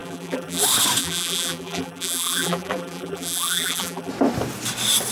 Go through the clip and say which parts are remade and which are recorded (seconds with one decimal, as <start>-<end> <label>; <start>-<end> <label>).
0.0-0.6 remade; 0.6-1.0 recorded; 1.0-4.1 remade; 4.1-5.1 recorded